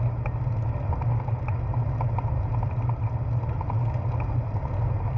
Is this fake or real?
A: real